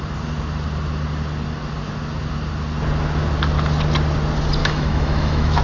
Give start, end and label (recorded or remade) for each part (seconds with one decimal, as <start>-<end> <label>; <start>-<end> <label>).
0.0-4.6 recorded; 4.6-5.6 remade